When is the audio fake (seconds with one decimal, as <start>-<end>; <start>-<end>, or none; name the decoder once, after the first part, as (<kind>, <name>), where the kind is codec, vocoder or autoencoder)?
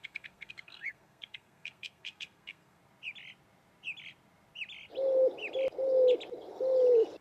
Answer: 0.0-2.8 (codec, SNAC)